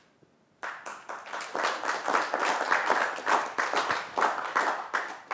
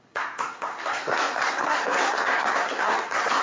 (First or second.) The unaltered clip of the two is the first